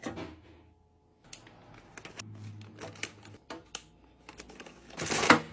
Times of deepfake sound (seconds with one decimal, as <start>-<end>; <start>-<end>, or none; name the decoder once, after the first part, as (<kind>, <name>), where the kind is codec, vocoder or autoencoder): none